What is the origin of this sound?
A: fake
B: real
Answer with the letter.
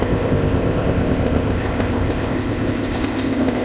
A